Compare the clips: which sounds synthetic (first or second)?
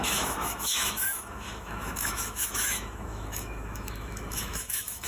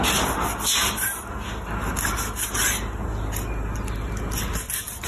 first